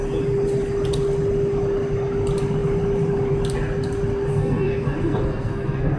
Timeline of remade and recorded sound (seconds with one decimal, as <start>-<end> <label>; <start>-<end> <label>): 0.0-4.3 recorded; 4.3-6.0 remade